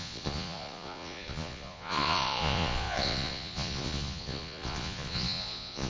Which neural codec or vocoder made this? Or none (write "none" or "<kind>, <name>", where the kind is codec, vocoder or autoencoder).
vocoder, Vocos